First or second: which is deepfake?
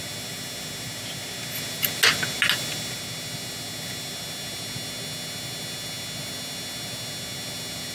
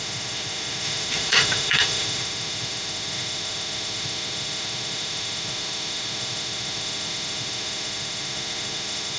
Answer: second